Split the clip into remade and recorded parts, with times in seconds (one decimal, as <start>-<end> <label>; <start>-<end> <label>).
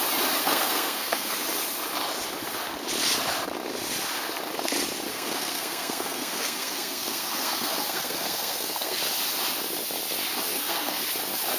0.0-0.4 recorded; 0.4-1.4 remade; 1.4-5.1 recorded; 5.1-9.0 remade; 9.0-10.5 recorded; 10.5-11.0 remade; 11.0-11.6 recorded